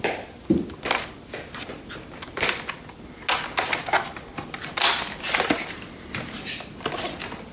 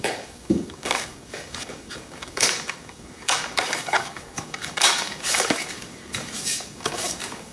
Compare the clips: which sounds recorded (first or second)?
first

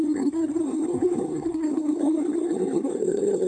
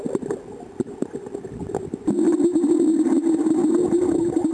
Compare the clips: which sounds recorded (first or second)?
second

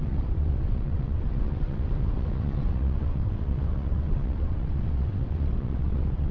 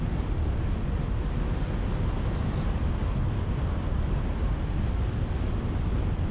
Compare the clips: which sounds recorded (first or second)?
second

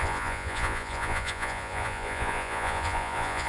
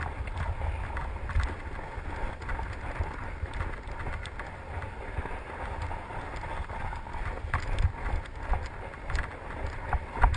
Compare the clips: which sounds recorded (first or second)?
second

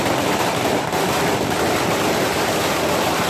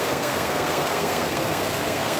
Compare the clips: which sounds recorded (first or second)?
first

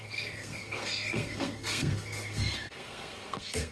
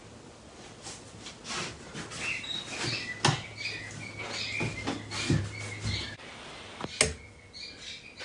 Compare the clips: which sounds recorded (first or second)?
second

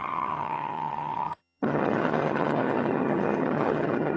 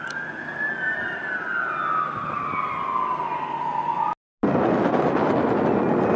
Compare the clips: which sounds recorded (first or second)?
second